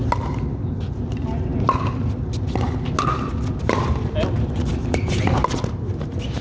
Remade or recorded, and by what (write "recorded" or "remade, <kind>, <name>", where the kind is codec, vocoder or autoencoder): recorded